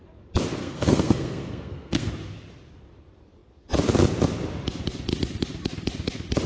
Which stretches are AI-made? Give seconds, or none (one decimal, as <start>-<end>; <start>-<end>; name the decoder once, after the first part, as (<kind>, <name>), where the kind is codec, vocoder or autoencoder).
0.6-2.1 (codec, SNAC)